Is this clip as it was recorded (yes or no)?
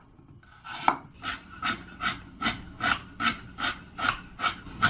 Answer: yes